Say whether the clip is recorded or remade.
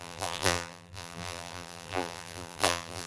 remade